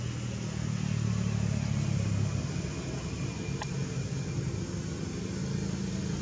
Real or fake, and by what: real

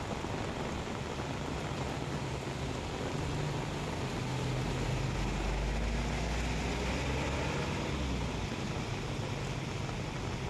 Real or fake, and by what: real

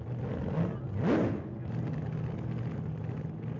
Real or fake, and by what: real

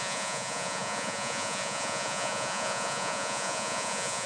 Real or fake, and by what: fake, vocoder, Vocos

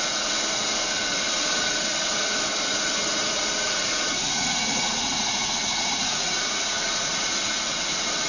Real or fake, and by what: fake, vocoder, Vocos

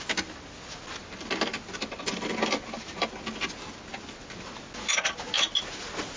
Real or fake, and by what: real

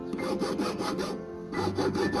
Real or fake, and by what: real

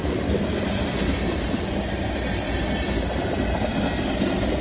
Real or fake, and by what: real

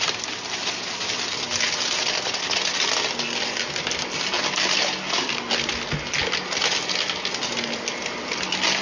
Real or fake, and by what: real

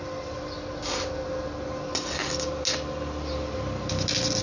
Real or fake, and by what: real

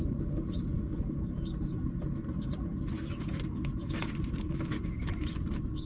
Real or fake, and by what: real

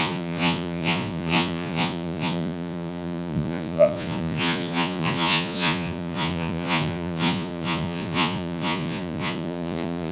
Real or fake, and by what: fake, vocoder, Vocos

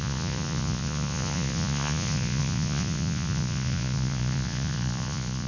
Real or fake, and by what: fake, vocoder, Vocos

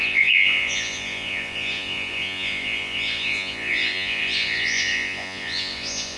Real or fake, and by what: fake, vocoder, Vocos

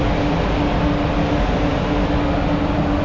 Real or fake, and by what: real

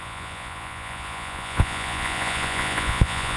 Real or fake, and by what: fake, vocoder, Vocos